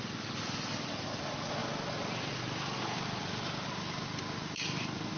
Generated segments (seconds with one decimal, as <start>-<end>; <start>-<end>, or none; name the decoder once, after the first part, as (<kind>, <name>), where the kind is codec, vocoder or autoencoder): none